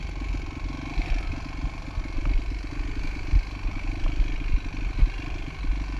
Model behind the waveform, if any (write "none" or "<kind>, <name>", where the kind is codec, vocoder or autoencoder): none